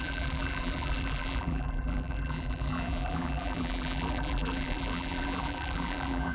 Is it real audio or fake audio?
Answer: fake